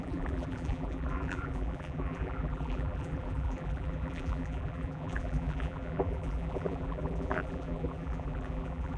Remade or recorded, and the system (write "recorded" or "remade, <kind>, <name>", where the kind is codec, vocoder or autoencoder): remade, vocoder, BigVGAN v2